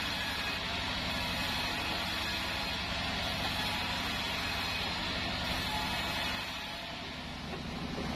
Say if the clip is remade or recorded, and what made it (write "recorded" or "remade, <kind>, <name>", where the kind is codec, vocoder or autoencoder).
recorded